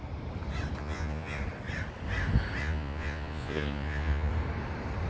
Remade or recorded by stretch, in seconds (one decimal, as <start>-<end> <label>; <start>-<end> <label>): 0.0-0.8 recorded; 0.8-1.4 remade; 1.4-2.6 recorded; 2.6-4.3 remade; 4.3-5.1 recorded